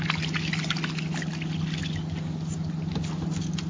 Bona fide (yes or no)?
yes